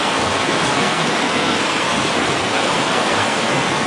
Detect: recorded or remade remade